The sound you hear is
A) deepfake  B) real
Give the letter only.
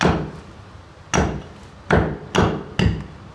B